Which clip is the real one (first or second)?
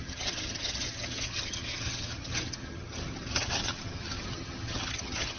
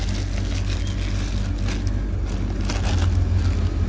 second